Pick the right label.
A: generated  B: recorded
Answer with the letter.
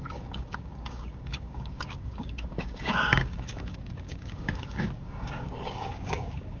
A